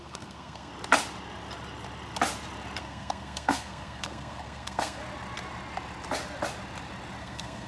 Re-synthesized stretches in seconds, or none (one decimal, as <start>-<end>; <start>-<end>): 0.0-0.7; 2.8-5.0; 7.2-7.7